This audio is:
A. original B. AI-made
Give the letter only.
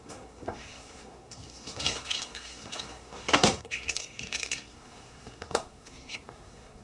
B